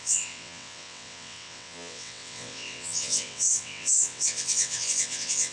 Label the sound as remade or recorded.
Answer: remade